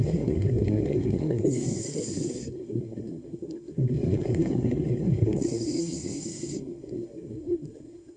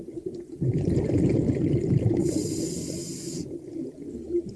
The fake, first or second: first